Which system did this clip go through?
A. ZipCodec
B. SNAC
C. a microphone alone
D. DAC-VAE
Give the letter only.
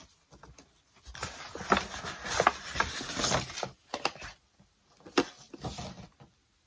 C